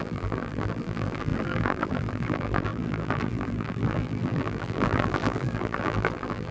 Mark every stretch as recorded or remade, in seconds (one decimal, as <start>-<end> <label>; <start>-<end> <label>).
0.0-6.5 remade